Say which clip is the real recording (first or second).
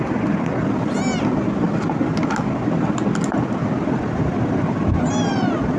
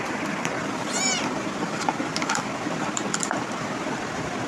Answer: first